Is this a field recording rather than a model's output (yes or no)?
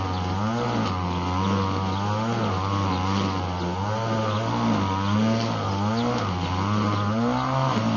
yes